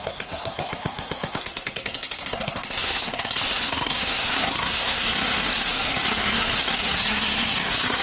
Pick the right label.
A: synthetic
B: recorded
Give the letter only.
A